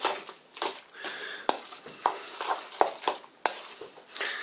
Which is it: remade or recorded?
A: recorded